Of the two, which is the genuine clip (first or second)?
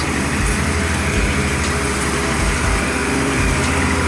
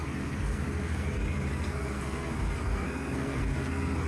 first